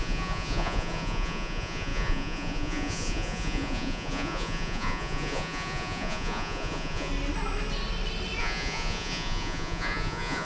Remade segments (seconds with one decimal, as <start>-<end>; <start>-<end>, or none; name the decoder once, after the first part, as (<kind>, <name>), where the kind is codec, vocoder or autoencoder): 0.0-7.1 (vocoder, Vocos); 8.4-10.4